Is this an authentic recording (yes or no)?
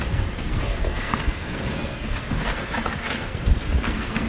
no